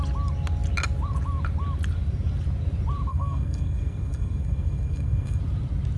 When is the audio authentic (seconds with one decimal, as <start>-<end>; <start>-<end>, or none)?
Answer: 0.0-3.1; 5.4-6.0